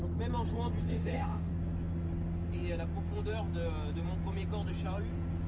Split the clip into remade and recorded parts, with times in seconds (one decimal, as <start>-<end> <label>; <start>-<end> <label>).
0.0-0.8 recorded; 0.8-1.5 remade; 1.5-5.5 recorded